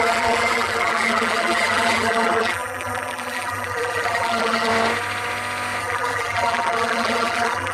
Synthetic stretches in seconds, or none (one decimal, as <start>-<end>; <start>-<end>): 0.0-4.7; 5.8-7.7